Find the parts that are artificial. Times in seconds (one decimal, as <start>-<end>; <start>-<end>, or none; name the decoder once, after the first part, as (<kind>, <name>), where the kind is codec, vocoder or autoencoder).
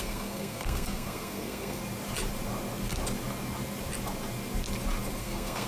0.0-1.8 (codec, SNAC); 5.2-5.7